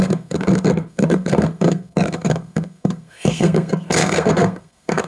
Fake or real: fake